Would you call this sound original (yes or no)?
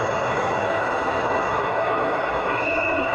no